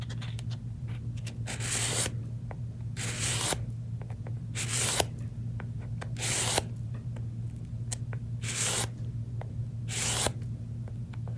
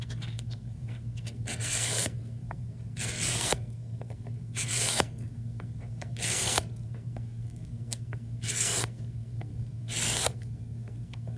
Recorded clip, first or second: first